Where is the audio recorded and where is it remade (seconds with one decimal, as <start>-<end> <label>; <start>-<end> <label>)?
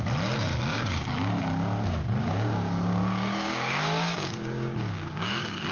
0.0-0.7 recorded; 0.7-1.4 remade; 1.4-2.2 recorded; 2.2-5.7 remade